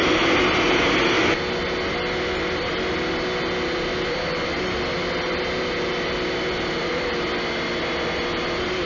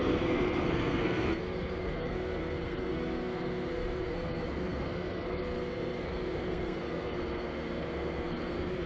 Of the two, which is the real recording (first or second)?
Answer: first